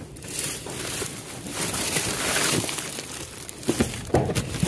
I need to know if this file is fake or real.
real